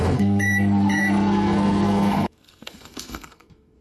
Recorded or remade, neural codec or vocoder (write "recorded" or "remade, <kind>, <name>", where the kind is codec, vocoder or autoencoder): remade, codec, SNAC